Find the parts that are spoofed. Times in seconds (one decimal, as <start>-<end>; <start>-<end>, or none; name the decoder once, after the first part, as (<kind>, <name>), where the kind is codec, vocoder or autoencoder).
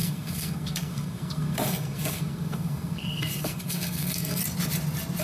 0.0-4.4 (codec, SNAC)